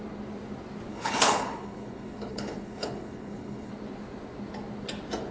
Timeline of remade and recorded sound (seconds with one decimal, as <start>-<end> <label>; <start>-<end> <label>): 0.0-0.9 recorded; 0.9-3.7 remade; 3.7-5.3 recorded